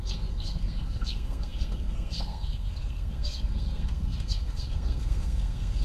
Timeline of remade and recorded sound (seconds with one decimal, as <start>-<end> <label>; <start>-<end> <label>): 0.0-5.8 remade